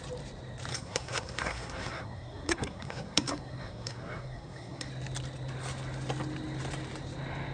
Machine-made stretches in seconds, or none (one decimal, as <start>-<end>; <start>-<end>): 0.7-4.9